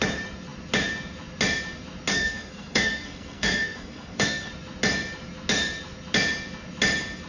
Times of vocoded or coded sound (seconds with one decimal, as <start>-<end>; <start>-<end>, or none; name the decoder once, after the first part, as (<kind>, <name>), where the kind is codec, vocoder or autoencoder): 2.1-4.5 (codec, SNAC)